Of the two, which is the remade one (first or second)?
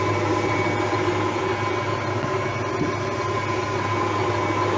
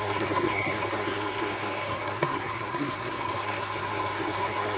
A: second